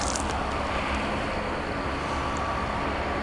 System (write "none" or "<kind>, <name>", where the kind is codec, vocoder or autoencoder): none